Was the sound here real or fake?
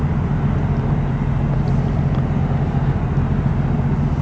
real